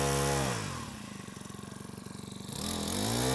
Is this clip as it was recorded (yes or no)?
yes